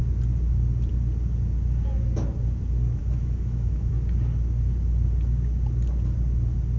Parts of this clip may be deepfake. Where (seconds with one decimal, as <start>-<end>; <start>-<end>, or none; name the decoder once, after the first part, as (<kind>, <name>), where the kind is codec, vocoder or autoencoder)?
3.0-3.9 (autoencoder, DAC-VAE)